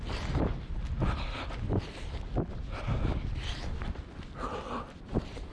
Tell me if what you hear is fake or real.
real